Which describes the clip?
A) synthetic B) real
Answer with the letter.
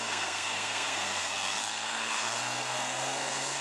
A